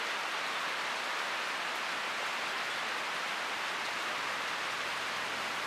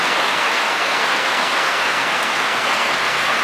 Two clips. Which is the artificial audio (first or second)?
second